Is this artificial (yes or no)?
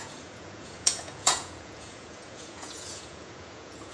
yes